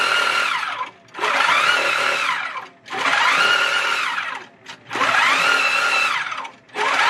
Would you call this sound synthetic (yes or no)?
no